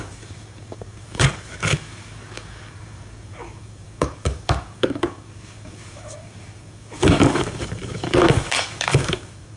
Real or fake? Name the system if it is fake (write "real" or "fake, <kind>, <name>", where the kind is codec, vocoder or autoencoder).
fake, codec, DAC